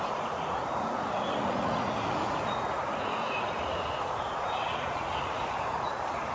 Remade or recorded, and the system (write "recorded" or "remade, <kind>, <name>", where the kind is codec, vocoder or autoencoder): remade, vocoder, Vocos